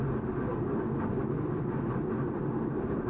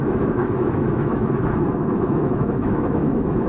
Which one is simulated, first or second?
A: second